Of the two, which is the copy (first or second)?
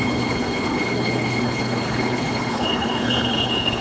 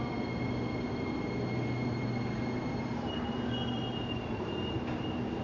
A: first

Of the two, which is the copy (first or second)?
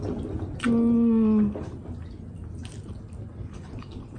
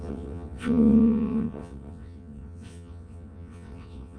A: second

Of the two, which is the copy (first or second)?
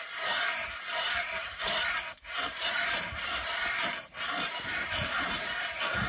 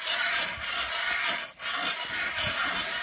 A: first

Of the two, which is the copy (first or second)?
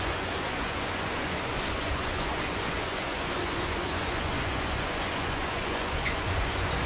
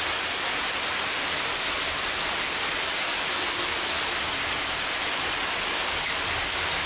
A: first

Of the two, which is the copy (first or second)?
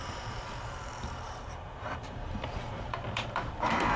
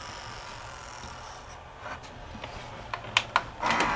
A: first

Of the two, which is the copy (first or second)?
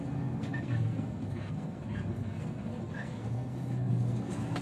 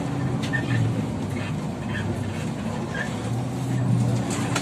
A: first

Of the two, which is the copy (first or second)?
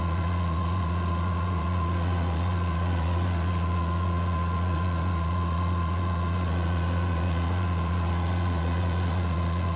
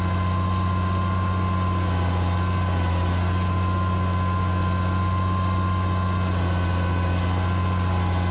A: first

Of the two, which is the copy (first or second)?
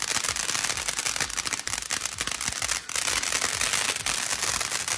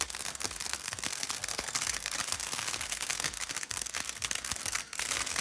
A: second